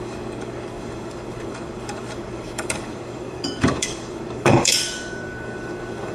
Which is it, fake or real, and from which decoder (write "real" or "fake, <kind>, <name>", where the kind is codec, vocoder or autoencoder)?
fake, codec, DAC